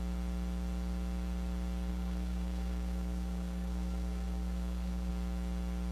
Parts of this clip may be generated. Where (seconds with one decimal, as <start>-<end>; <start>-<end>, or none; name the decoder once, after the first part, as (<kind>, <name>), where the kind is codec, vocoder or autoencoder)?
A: 1.9-5.1 (codec, SNAC)